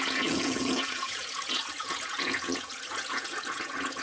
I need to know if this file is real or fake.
fake